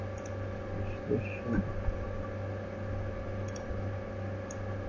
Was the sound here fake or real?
real